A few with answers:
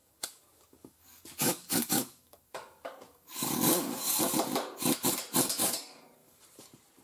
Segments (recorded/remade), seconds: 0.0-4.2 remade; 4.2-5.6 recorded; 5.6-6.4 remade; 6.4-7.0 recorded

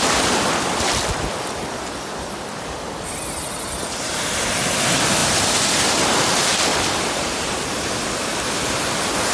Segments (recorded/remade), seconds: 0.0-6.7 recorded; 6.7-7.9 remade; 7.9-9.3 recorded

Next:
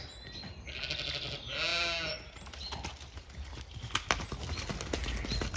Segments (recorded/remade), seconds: 0.0-5.6 recorded

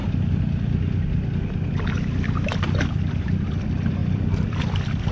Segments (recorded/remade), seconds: 0.0-4.0 recorded; 4.0-5.1 remade

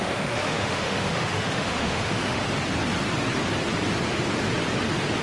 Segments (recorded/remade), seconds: 0.0-2.4 remade; 2.4-5.2 recorded

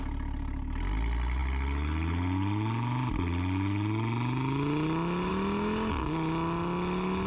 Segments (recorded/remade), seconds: 0.0-7.3 recorded

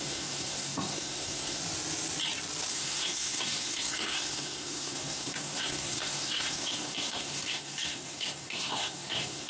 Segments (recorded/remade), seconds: 0.0-1.6 remade; 1.6-2.7 recorded; 2.7-9.5 remade